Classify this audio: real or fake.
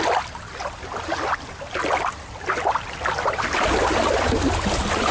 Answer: real